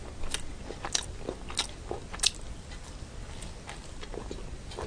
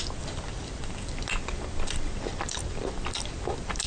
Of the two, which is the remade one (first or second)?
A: second